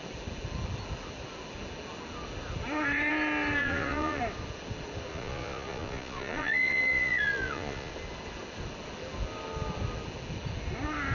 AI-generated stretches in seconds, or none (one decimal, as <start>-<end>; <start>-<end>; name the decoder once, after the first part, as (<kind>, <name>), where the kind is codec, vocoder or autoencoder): 3.6-4.2 (vocoder, Vocos); 5.1-7.9